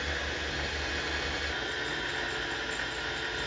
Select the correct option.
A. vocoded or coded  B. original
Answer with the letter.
B